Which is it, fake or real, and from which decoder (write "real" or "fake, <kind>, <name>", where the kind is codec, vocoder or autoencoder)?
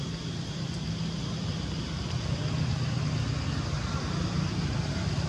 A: real